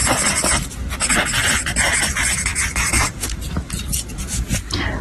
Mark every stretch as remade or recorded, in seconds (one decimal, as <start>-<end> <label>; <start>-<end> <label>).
0.0-0.7 remade; 0.7-5.0 recorded